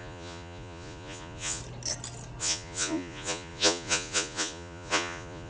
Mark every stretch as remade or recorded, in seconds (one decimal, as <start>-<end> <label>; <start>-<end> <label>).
0.0-1.6 remade; 1.6-2.4 recorded; 2.4-5.5 remade

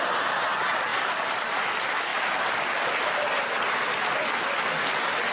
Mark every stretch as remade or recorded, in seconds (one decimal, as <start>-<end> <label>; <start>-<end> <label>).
0.0-5.3 recorded

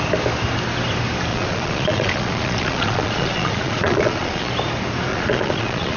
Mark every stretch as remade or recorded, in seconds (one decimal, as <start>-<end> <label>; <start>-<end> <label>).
0.0-1.3 recorded; 1.3-4.5 remade; 4.5-5.1 recorded; 5.1-6.0 remade

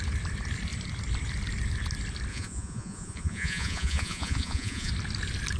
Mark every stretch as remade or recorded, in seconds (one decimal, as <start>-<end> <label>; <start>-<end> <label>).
0.0-2.3 recorded; 2.3-4.9 remade; 4.9-5.6 recorded

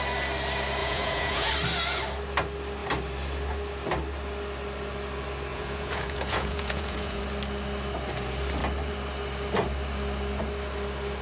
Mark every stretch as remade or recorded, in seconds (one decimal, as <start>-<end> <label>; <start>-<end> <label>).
0.0-0.8 recorded; 0.8-1.5 remade; 1.5-5.5 recorded; 5.5-7.2 remade; 7.2-11.2 recorded